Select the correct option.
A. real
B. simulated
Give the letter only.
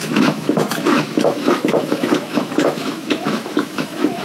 B